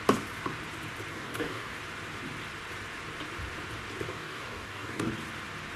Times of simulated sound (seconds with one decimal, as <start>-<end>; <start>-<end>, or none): 1.1-1.8; 4.1-5.1

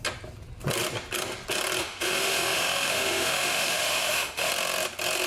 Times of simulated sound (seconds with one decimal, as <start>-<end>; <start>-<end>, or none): 1.8-4.5